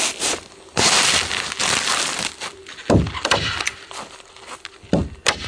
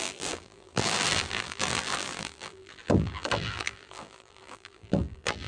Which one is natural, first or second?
first